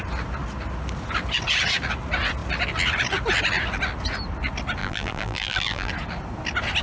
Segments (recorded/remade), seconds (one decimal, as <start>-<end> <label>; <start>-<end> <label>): 0.0-4.8 recorded; 4.8-5.9 remade; 5.9-6.8 recorded